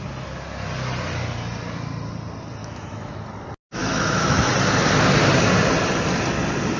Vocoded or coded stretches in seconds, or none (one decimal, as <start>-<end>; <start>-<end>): 2.6-3.2; 3.8-4.5